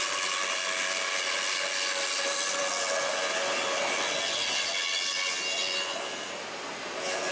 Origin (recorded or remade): remade